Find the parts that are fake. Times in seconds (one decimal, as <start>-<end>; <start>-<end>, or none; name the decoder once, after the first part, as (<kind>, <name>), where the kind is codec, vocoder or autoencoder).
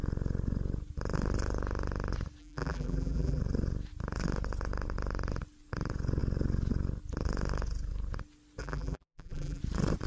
2.4-3.4 (vocoder, BigVGAN v2); 8.6-9.6